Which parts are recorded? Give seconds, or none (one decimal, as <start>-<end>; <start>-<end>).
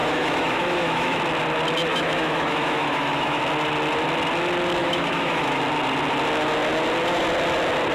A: 1.2-1.9; 3.4-4.8; 5.6-7.9